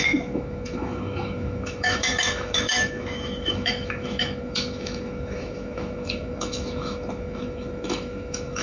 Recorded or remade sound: remade